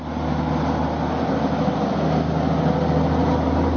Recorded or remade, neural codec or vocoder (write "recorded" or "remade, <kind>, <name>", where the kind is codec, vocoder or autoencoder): recorded